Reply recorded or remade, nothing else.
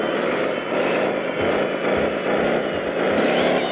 recorded